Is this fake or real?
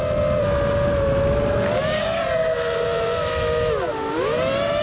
real